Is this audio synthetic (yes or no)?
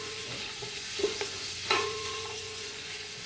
yes